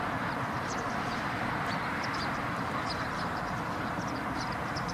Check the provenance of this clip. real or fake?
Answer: fake